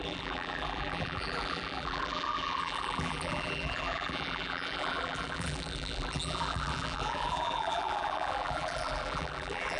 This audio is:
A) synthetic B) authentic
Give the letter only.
A